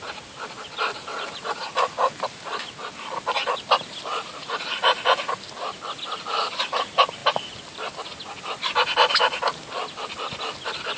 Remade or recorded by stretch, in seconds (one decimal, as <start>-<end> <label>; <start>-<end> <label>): 0.0-1.1 recorded; 1.1-2.1 remade; 2.1-4.1 recorded; 4.1-5.3 remade; 5.3-11.0 recorded